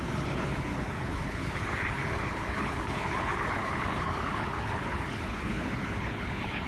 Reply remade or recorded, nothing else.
remade